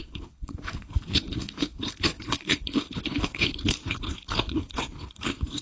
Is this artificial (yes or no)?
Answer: yes